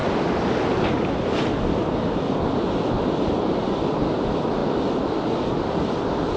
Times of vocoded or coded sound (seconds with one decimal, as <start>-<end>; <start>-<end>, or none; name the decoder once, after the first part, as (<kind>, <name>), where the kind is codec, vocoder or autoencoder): none